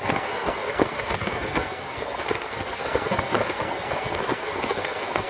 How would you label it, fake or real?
fake